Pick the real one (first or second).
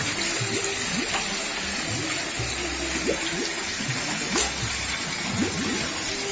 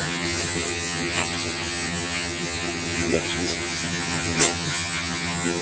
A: first